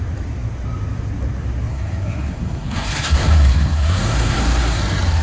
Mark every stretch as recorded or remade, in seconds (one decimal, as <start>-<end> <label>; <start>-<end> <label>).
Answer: 0.0-1.7 recorded; 1.7-4.8 remade; 4.8-5.2 recorded

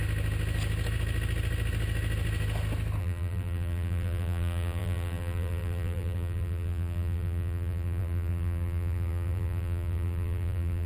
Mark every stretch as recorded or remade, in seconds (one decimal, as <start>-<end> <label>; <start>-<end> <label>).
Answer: 0.0-3.0 recorded; 3.0-10.9 remade

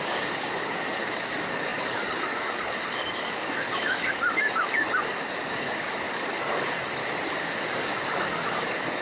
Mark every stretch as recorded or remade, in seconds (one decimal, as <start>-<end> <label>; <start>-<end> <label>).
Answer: 0.0-7.0 remade; 7.0-7.6 recorded; 7.6-9.0 remade

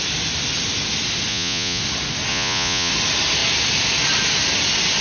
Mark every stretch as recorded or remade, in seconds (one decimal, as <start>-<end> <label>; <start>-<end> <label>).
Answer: 0.0-1.3 recorded; 1.3-1.8 remade; 1.8-2.3 recorded; 2.3-2.9 remade; 2.9-5.0 recorded